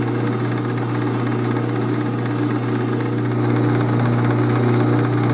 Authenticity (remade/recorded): recorded